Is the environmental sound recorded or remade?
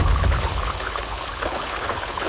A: remade